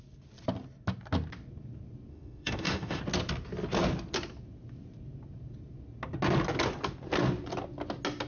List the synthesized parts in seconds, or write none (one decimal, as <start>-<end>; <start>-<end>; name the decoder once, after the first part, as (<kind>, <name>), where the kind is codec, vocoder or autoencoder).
2.1-3.0 (autoencoder, DAC-VAE)